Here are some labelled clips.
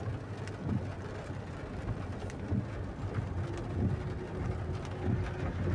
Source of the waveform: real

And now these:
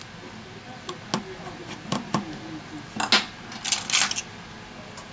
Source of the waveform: real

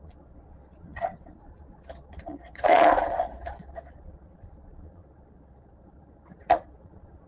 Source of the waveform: fake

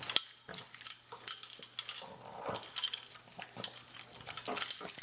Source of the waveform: real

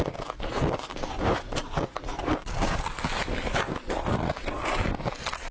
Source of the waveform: real